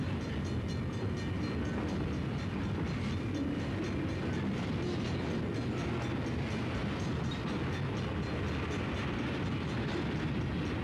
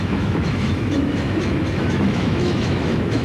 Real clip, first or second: first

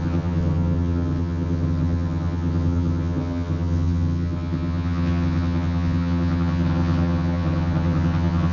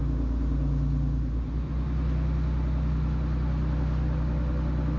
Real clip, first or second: second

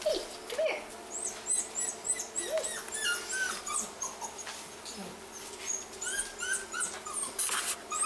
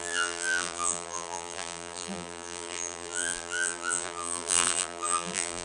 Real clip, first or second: first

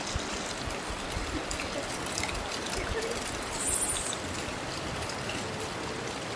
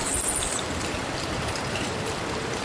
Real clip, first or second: first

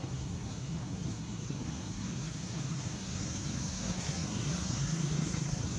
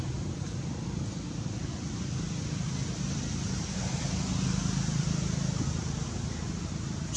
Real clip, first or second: second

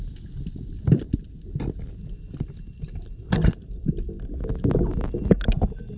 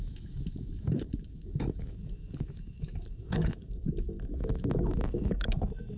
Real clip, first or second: first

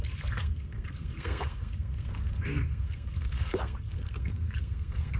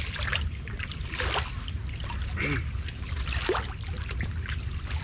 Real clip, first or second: second